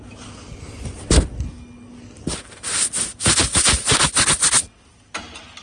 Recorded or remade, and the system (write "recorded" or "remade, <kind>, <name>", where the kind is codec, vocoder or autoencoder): recorded